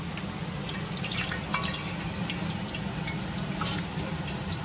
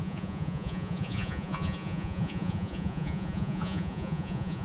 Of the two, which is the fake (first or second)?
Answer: second